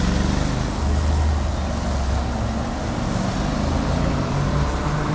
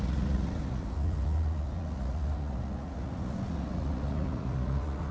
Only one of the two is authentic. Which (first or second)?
first